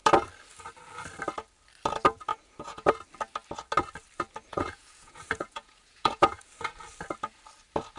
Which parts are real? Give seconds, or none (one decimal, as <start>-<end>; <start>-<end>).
0.0-2.3; 2.9-4.5; 6.5-8.0